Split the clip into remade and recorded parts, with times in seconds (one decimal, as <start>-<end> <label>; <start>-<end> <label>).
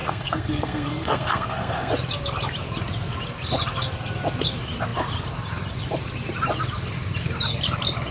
0.0-1.9 remade; 1.9-8.1 recorded